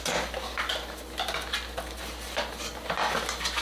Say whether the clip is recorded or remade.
recorded